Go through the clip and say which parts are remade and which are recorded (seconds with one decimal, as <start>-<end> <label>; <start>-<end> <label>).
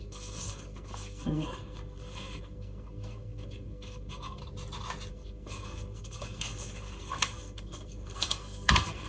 0.0-4.4 remade; 4.4-5.1 recorded; 5.1-9.1 remade